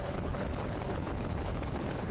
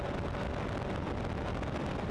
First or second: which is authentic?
second